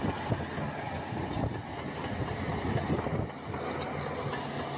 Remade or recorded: recorded